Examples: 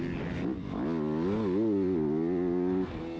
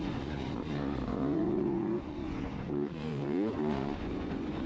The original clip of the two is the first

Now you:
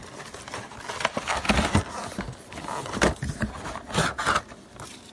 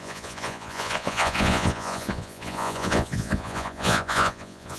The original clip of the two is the first